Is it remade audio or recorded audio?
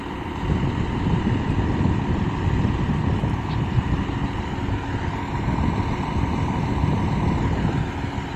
recorded